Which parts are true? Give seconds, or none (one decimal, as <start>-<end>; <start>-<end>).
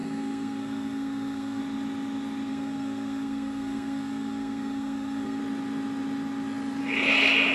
1.6-2.5; 5.4-7.5